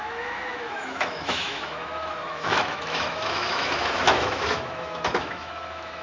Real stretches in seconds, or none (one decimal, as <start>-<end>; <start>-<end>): none